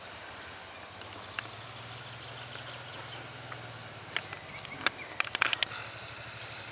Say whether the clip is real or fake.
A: real